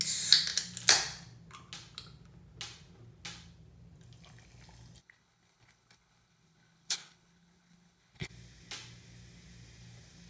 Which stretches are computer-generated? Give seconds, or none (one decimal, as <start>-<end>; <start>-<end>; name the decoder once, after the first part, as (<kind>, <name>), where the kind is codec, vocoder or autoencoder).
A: 5.0-8.3 (codec, HILCodec)

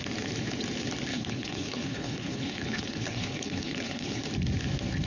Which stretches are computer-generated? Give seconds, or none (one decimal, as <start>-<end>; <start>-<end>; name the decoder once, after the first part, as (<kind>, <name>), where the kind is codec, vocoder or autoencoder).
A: 1.1-4.2 (codec, HILCodec)

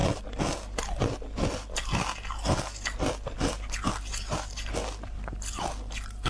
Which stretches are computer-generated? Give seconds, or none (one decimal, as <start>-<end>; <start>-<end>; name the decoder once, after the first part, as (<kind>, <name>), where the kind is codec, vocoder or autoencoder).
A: none

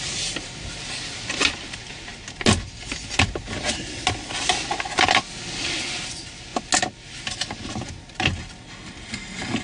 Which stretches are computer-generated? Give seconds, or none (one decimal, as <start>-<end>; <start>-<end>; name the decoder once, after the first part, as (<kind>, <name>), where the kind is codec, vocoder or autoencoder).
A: none

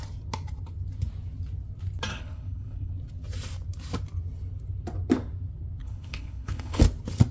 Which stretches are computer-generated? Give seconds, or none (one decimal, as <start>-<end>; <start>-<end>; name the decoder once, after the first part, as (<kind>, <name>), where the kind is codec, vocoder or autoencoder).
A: 2.1-2.9 (codec, HILCodec); 5.8-6.8

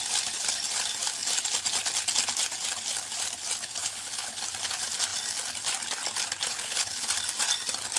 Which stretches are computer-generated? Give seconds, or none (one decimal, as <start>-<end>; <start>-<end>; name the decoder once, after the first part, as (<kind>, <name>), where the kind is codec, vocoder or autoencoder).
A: 3.8-4.4 (codec, HILCodec); 6.5-7.1

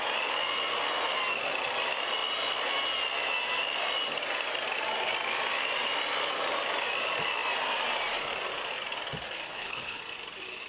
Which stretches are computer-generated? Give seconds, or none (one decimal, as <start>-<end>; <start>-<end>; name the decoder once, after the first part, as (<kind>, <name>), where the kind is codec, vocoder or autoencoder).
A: 9.5-10.0 (codec, HILCodec)

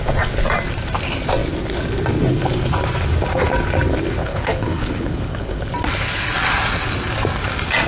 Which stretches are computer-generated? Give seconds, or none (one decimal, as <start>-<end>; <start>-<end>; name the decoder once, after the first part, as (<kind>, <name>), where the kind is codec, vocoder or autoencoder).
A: 4.2-5.6 (codec, HILCodec)